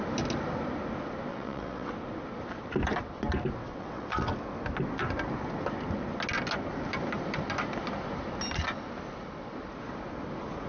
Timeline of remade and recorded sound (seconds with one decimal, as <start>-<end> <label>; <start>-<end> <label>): 0.0-1.3 recorded; 1.3-1.9 remade; 1.9-3.6 recorded; 3.6-4.3 remade; 4.3-10.7 recorded